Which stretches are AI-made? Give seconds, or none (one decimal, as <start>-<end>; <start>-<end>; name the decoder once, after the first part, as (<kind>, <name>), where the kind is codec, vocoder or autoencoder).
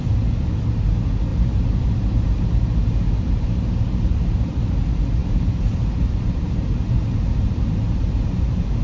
1.3-4.1 (vocoder, BigVGAN v2); 5.2-8.8